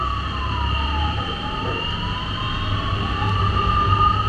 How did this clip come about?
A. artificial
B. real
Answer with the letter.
B